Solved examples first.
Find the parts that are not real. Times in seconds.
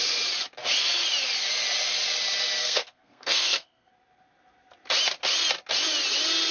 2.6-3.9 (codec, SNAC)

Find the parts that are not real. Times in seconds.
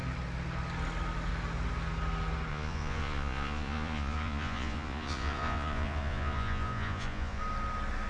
2.5-7.4 (vocoder, Vocos)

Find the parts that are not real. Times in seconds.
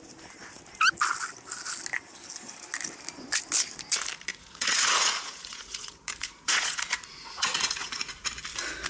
4.3-8.3 (vocoder, Vocos)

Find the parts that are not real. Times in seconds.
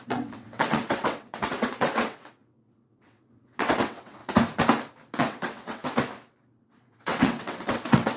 0.0-4.2 (vocoder, WaveNeXt); 5.2-5.8; 6.6-8.2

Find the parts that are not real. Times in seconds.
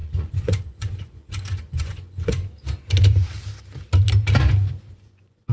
0.0-2.4 (vocoder, Vocos); 4.9-5.5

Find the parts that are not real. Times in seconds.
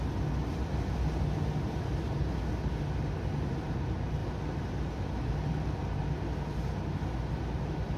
none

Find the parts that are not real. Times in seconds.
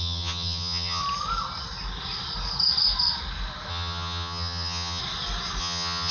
0.0-1.0 (vocoder, HiFi-GAN); 3.7-5.0; 5.6-6.1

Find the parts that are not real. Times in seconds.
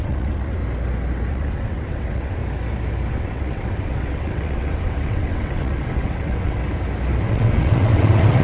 0.0-0.6 (vocoder, WaveNeXt); 1.3-2.4; 3.1-6.6; 7.2-8.4